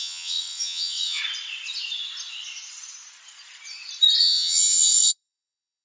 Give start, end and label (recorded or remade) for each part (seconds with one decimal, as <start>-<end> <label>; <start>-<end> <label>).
0.0-1.2 remade; 1.2-4.2 recorded; 4.2-5.8 remade